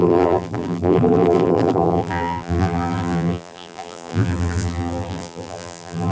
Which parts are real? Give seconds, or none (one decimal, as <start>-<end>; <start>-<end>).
none